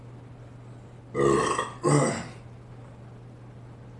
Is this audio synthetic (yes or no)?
no